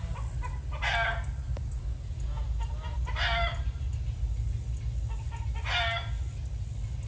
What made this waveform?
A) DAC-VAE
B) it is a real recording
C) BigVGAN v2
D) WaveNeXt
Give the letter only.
B